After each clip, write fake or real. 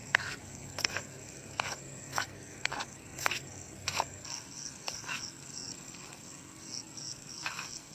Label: fake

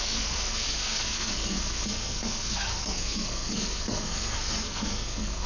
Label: fake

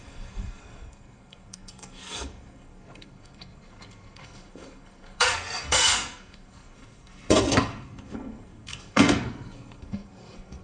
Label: fake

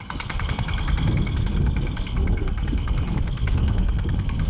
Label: fake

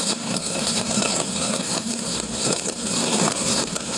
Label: fake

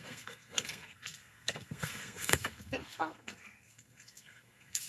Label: fake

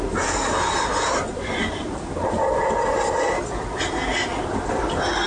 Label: real